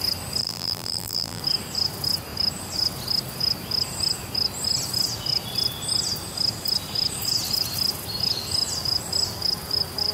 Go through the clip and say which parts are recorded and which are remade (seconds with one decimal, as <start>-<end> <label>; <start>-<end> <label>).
0.0-0.4 recorded; 0.4-1.4 remade; 1.4-10.1 recorded